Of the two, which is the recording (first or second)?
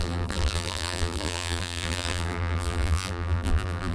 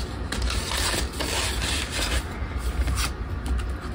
second